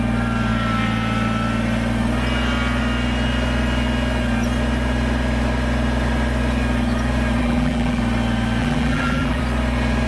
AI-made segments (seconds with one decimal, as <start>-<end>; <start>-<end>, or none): 7.4-8.0; 8.6-9.4